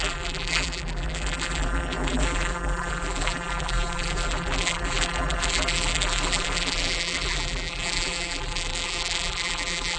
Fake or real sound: fake